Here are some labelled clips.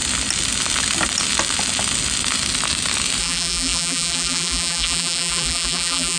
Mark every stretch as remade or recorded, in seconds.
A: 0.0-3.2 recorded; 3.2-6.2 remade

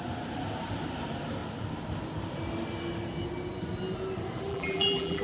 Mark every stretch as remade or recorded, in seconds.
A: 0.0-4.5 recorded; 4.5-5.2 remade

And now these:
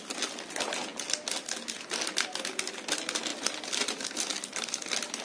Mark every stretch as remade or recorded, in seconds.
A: 0.0-3.3 recorded; 3.3-4.1 remade; 4.1-5.2 recorded

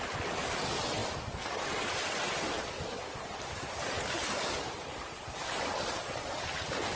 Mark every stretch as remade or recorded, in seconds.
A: 0.0-7.0 recorded